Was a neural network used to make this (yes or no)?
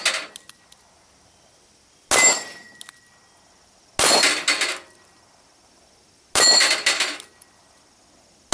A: no